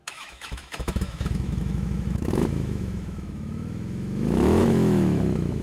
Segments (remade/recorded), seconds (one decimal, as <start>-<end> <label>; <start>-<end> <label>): 0.0-5.6 remade